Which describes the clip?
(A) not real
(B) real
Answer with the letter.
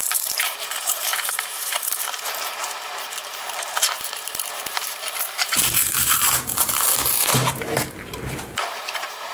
A